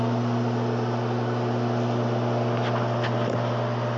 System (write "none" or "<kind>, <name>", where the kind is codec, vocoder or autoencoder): none